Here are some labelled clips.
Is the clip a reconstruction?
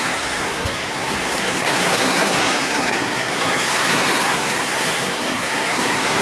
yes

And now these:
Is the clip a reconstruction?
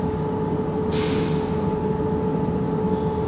no